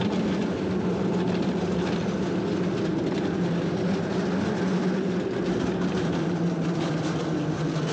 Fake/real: real